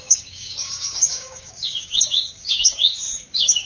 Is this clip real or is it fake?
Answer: fake